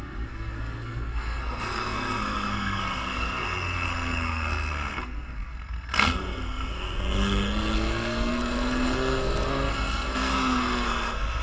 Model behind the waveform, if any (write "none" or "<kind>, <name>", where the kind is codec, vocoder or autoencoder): codec, SNAC